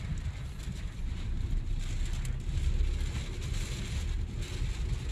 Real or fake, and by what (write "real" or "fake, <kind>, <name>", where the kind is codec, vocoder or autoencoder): real